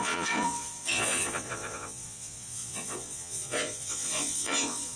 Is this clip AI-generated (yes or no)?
yes